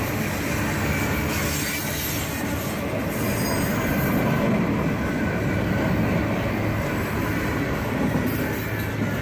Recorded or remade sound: recorded